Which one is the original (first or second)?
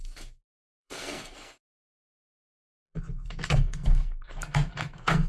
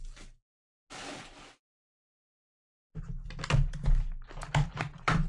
second